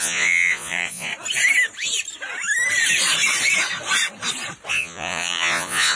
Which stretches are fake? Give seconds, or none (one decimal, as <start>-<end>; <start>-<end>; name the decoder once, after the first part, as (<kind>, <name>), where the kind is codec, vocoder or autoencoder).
0.0-1.1 (vocoder, Vocos); 4.7-6.0